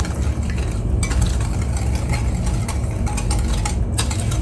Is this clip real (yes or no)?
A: yes